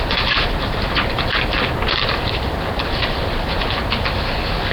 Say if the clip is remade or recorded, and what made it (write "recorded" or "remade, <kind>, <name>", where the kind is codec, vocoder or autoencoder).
recorded